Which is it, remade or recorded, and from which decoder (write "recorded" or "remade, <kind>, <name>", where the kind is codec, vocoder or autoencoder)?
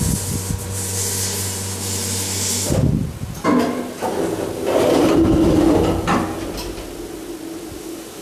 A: recorded